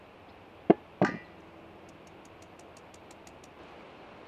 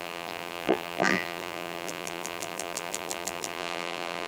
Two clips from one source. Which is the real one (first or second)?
first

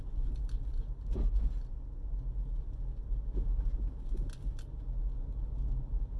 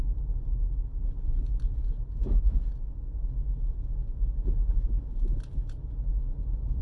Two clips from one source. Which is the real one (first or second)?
first